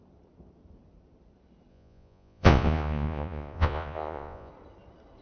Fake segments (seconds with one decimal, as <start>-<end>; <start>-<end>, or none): 1.7-4.5